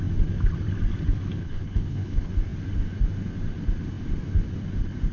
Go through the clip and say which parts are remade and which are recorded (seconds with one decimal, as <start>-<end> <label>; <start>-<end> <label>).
0.0-1.4 recorded; 1.4-2.3 remade; 2.3-5.1 recorded

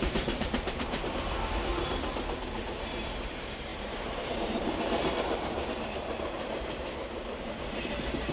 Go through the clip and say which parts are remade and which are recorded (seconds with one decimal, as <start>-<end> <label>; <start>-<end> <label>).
0.0-1.7 remade; 1.7-2.6 recorded; 2.6-8.3 remade

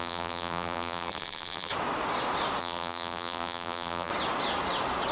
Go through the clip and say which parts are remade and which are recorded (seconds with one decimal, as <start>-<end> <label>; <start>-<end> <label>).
0.0-1.7 remade; 1.7-2.6 recorded; 2.6-4.1 remade; 4.1-5.1 recorded